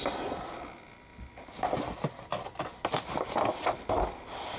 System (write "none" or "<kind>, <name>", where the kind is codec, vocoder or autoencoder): none